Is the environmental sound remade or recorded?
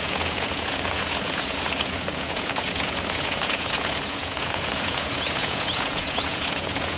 remade